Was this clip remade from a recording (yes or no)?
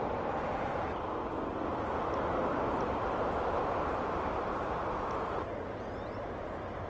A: no